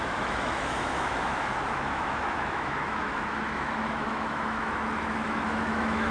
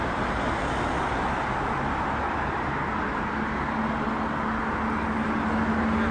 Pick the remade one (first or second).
first